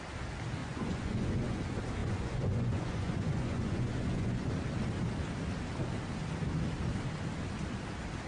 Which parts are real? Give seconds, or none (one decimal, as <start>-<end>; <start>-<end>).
0.0-0.6; 1.6-2.0; 4.5-8.3